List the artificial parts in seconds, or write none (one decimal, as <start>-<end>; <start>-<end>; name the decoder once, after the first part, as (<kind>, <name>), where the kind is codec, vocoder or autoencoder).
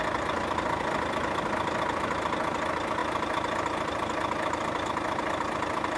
none